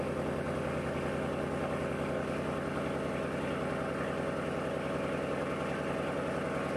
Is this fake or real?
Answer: real